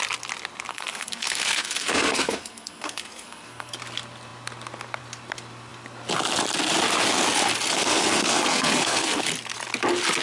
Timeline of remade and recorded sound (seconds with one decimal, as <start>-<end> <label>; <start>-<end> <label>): 0.0-0.7 recorded; 0.7-3.7 remade; 3.7-7.8 recorded; 7.8-9.2 remade; 9.2-10.2 recorded